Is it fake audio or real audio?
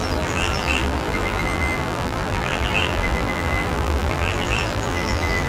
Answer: fake